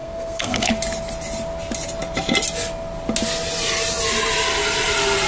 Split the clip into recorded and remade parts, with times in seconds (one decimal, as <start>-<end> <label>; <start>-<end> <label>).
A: 0.0-0.7 remade; 0.7-5.3 recorded